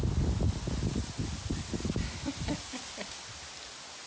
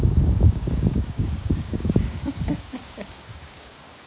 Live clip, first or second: first